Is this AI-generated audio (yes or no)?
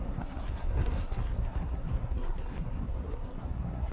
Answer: yes